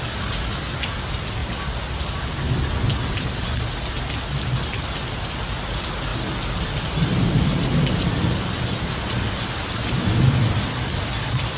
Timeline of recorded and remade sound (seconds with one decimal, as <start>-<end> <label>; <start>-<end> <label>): 0.0-6.1 recorded; 6.1-8.9 remade; 8.9-11.6 recorded